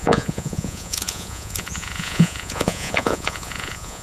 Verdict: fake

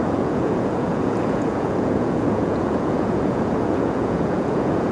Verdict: fake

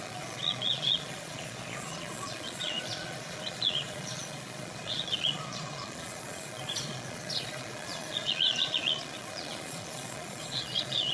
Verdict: fake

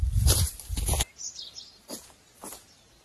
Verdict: real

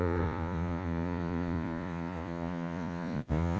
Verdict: fake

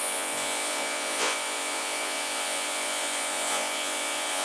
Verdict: fake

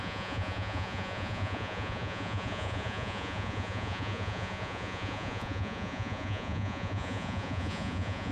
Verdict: fake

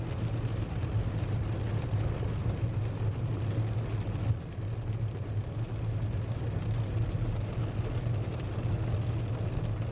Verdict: real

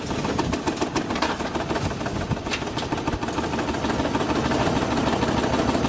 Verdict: real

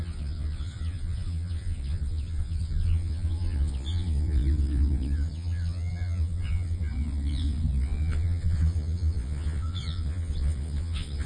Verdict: fake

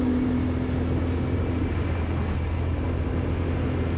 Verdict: real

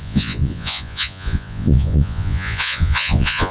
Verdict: fake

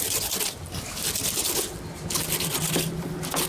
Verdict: real